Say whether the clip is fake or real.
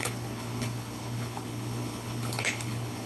fake